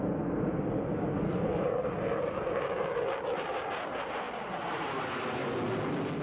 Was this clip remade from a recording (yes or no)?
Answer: no